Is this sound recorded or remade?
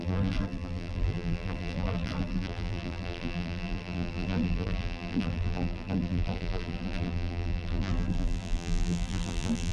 remade